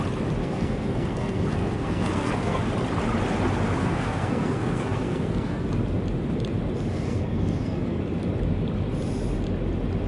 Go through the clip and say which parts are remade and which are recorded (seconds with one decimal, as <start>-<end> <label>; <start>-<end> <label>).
0.0-0.4 recorded; 0.4-2.7 remade; 2.7-3.8 recorded; 3.8-5.7 remade; 5.7-6.9 recorded; 6.9-8.0 remade; 8.0-10.1 recorded